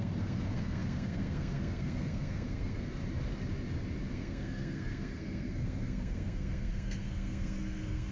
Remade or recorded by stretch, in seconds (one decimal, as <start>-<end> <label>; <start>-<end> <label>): 0.0-3.0 remade; 3.0-4.1 recorded; 4.1-8.1 remade